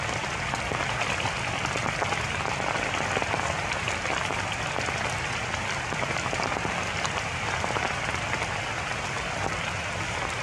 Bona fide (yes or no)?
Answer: yes